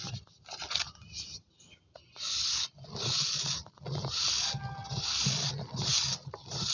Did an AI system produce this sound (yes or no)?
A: no